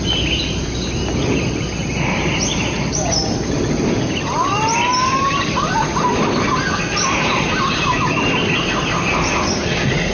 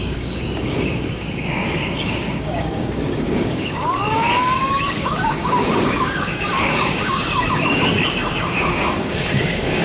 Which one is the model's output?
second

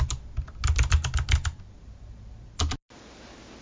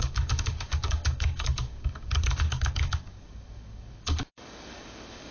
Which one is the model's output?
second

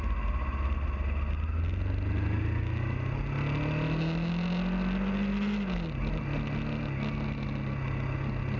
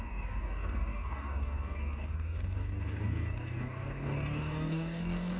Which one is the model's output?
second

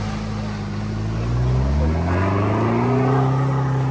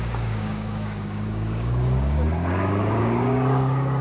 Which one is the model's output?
second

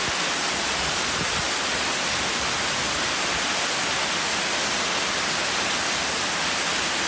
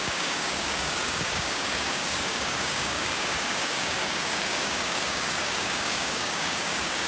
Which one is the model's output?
second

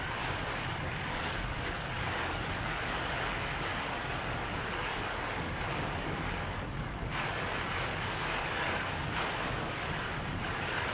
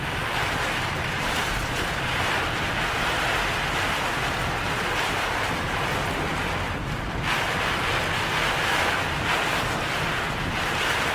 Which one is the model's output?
first